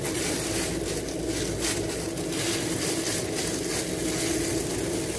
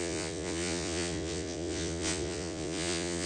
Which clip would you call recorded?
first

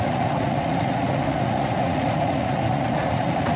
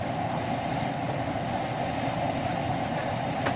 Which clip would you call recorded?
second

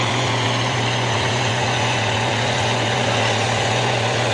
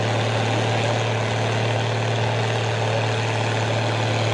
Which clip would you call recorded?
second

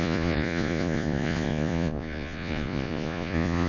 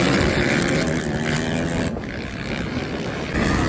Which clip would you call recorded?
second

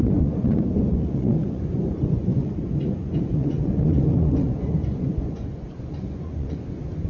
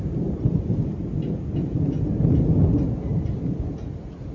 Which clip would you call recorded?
second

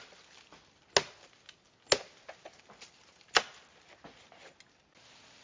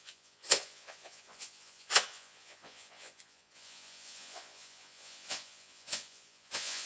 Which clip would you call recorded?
first